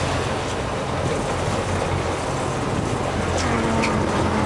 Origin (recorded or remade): recorded